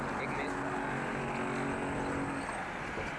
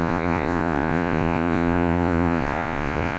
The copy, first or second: second